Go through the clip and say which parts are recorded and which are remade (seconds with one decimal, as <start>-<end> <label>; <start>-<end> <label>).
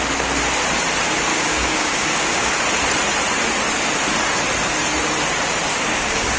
0.0-1.3 recorded; 1.3-2.5 remade; 2.5-5.7 recorded; 5.7-6.4 remade